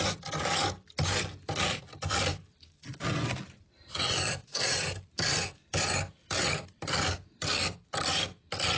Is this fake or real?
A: real